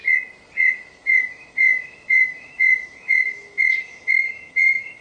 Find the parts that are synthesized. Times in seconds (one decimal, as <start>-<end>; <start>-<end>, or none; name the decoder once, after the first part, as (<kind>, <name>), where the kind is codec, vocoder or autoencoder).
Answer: 0.9-5.0 (autoencoder, DAC-VAE)